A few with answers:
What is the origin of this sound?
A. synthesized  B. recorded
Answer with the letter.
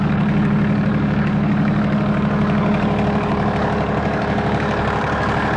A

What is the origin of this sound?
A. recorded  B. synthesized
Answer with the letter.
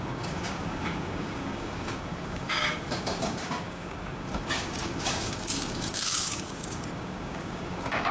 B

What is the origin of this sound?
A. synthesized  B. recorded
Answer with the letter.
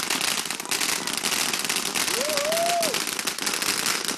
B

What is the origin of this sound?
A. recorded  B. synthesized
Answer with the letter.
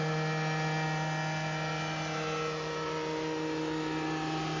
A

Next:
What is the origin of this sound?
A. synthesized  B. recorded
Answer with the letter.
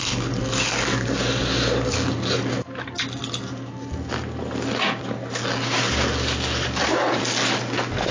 B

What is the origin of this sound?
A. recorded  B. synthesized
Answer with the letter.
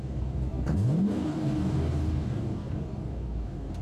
B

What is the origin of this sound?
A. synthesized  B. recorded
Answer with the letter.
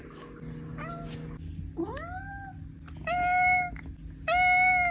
B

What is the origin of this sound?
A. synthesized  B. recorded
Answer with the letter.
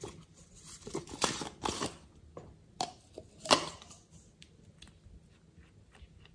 B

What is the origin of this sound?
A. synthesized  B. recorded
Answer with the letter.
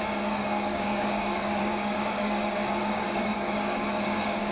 A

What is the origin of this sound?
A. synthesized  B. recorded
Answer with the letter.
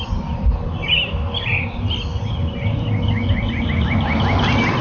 B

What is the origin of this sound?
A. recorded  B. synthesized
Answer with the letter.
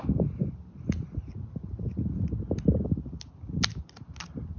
A